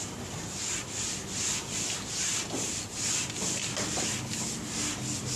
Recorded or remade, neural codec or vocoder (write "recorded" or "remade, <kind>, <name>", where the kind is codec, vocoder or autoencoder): recorded